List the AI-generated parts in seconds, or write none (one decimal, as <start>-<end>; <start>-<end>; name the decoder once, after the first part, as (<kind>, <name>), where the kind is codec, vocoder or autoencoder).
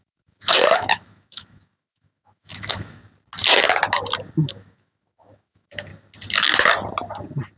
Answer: 0.0-3.0 (autoencoder, DAC-VAE); 4.5-5.9